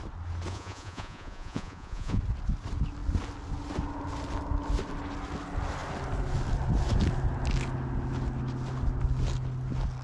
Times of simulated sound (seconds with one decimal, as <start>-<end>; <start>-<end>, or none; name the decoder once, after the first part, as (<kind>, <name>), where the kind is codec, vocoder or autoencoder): 0.5-2.2 (vocoder, Vocos)

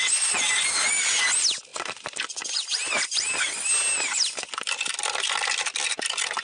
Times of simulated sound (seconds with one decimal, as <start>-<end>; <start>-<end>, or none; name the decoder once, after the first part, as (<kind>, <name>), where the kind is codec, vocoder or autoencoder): none

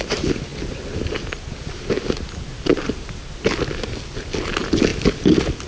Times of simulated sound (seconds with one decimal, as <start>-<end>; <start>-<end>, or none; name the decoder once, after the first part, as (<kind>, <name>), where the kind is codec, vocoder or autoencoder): none

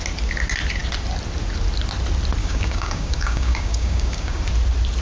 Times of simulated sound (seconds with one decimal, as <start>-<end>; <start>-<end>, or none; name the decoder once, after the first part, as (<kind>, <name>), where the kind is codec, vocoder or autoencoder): 2.4-4.4 (codec, DAC)

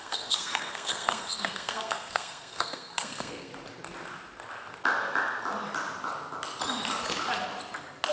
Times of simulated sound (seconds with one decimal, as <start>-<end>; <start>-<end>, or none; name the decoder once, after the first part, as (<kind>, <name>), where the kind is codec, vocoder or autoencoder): 0.0-3.5 (codec, SNAC)

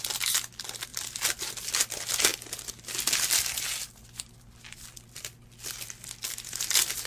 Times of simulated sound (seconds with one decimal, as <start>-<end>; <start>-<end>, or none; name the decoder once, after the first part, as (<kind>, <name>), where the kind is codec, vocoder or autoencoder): 0.9-1.4 (vocoder, BigVGAN v2)

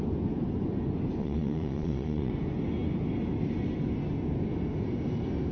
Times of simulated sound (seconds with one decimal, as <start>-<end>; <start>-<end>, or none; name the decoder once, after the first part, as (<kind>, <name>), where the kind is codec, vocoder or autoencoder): 1.2-2.3 (vocoder, Vocos)

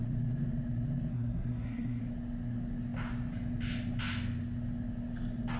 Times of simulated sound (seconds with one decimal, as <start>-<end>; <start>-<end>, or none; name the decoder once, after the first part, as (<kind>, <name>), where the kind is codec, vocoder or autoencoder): 1.1-2.0 (codec, SNAC)